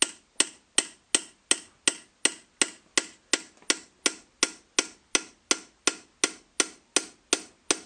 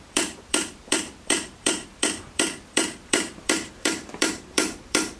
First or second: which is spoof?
second